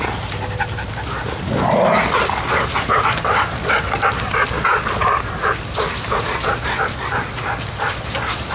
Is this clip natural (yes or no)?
yes